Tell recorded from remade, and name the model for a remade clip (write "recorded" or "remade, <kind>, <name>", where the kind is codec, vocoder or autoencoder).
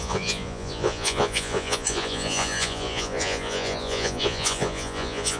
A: remade, vocoder, Vocos